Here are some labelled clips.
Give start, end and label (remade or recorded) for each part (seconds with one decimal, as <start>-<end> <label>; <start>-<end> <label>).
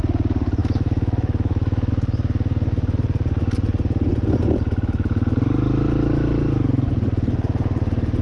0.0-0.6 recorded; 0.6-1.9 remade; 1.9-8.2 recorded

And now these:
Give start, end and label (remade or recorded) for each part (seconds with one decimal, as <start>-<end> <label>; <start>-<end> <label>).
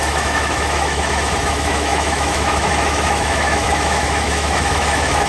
0.0-5.3 remade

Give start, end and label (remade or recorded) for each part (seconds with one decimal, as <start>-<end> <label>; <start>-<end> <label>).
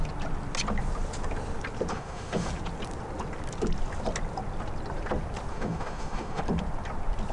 0.0-1.9 recorded; 1.9-2.5 remade; 2.5-5.5 recorded; 5.5-6.4 remade; 6.4-7.3 recorded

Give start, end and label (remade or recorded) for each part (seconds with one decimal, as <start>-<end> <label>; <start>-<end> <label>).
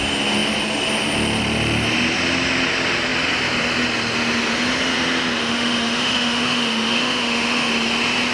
0.0-5.4 recorded; 5.4-7.7 remade; 7.7-8.3 recorded